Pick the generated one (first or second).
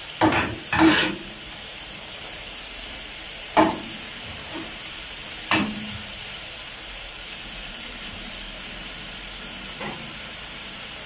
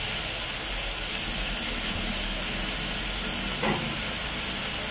first